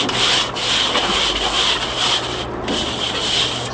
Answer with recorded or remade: recorded